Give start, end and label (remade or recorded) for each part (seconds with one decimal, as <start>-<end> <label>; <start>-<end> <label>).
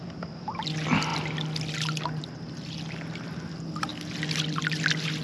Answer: 0.0-5.2 recorded